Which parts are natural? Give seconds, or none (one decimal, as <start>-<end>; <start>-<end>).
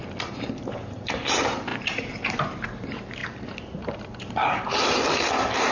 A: none